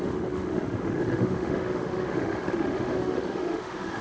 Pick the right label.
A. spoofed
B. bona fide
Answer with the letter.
A